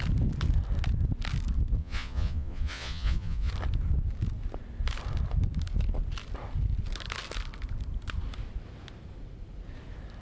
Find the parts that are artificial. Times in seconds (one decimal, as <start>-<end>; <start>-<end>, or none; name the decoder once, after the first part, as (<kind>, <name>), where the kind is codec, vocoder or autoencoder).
1.8-3.5 (vocoder, Vocos)